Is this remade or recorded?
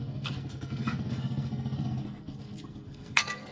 remade